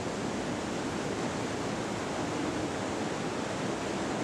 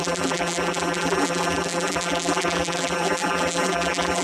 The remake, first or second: second